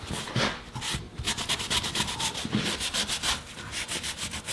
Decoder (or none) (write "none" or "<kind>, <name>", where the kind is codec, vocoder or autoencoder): none